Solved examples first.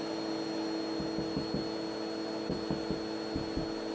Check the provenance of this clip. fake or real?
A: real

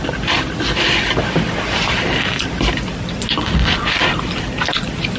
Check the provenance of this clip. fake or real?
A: real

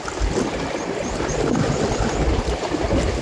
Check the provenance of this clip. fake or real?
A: real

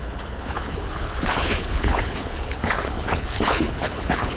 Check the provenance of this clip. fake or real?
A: fake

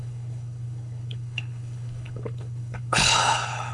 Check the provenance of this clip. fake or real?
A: fake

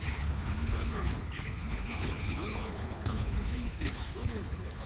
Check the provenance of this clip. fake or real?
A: fake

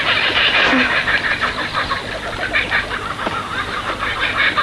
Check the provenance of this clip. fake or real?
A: real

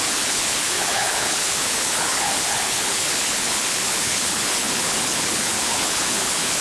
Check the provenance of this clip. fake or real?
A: fake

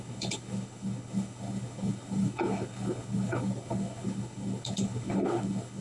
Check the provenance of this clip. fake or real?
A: fake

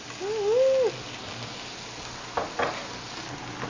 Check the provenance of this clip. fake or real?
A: real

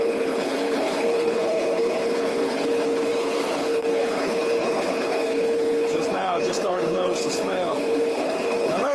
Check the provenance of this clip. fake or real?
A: fake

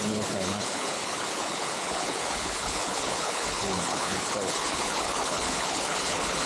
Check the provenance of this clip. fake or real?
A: fake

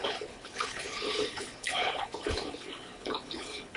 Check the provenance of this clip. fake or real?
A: fake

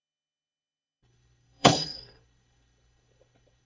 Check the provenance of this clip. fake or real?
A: fake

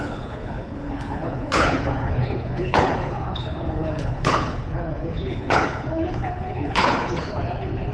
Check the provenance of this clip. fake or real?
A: fake